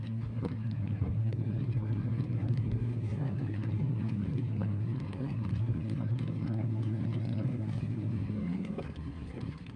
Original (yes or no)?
no